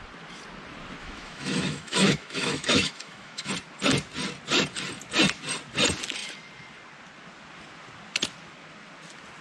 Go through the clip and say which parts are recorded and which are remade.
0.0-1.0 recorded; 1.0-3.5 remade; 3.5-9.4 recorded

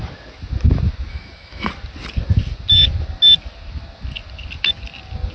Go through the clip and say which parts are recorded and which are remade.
0.0-1.1 recorded; 1.1-1.7 remade; 1.7-5.3 recorded

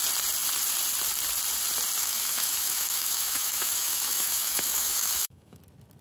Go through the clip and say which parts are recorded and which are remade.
0.0-2.0 recorded; 2.0-5.6 remade; 5.6-6.0 recorded

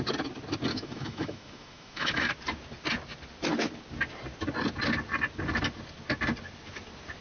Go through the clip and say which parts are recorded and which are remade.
0.0-0.7 recorded; 0.7-2.3 remade; 2.3-7.2 recorded

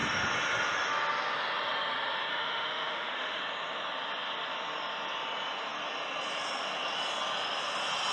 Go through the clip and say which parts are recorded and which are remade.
0.0-2.3 recorded; 2.3-3.4 remade; 3.4-8.1 recorded

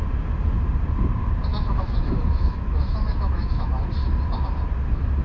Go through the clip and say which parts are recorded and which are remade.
0.0-1.5 recorded; 1.5-3.7 remade; 3.7-5.2 recorded

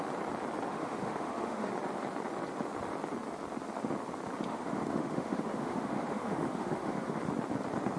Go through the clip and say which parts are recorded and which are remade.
0.0-0.7 recorded; 0.7-1.7 remade; 1.7-4.5 recorded; 4.5-7.2 remade; 7.2-8.0 recorded

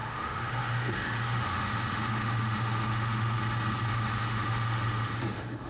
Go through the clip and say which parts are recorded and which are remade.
0.0-3.4 remade; 3.4-3.9 recorded; 3.9-5.7 remade